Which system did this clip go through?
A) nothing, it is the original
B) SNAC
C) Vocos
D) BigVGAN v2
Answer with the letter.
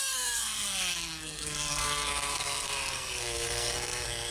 B